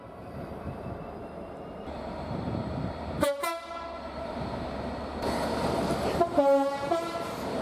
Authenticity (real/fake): fake